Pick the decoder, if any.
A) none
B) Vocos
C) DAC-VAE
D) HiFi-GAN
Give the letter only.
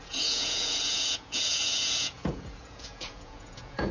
B